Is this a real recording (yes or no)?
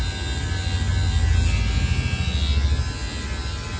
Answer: yes